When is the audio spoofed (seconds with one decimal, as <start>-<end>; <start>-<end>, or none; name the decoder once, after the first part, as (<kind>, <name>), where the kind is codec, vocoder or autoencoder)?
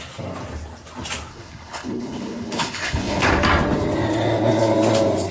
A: 1.3-3.3 (codec, HILCodec)